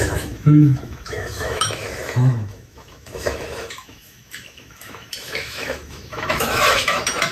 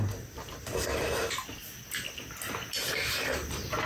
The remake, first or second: first